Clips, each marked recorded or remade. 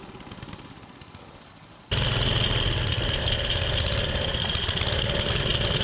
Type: recorded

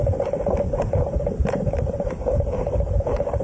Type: recorded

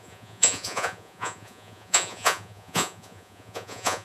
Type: remade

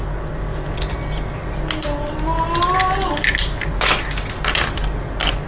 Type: recorded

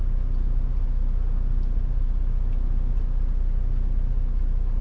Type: recorded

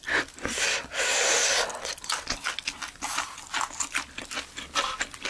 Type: recorded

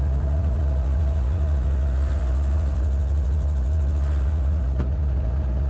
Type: remade